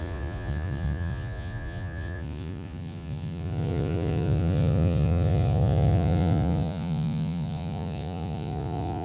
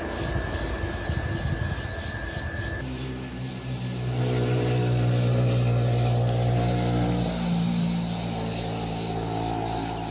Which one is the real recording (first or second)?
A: second